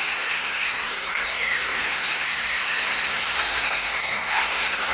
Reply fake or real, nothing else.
fake